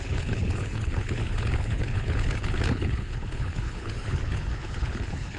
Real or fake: fake